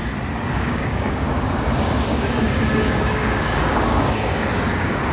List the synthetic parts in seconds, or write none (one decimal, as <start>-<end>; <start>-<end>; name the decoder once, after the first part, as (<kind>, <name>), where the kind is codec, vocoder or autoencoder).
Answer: 0.5-5.1 (codec, DAC)